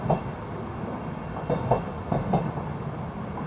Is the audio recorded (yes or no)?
yes